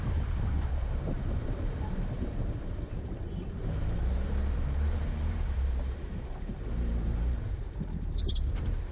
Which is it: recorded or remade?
remade